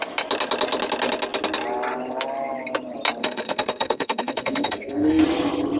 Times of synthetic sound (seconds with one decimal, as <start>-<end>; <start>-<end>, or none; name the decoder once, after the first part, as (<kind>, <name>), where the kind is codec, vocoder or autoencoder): 3.2-5.2 (codec, SNAC)